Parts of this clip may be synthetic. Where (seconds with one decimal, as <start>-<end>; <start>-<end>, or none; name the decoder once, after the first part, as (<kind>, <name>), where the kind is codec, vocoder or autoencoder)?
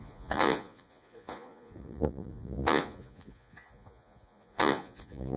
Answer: 0.0-5.4 (vocoder, Vocos)